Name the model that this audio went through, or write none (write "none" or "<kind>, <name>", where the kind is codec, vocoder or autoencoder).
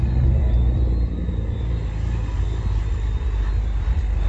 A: none